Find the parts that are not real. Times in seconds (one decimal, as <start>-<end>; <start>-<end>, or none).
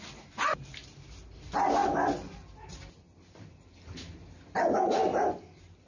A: none